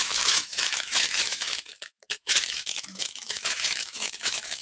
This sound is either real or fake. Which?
fake